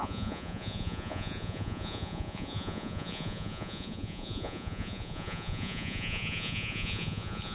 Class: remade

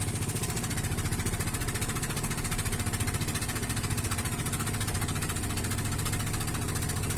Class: recorded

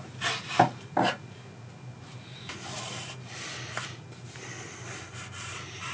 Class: recorded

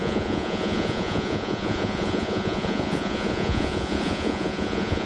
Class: remade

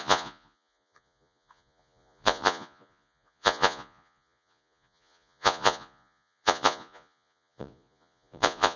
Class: remade